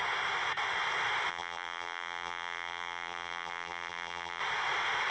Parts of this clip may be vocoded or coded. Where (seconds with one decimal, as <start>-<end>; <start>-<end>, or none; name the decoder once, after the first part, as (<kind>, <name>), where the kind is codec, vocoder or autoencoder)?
1.3-4.4 (vocoder, BigVGAN v2)